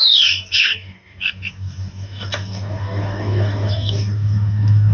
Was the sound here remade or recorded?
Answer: remade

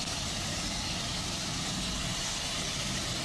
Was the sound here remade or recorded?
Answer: recorded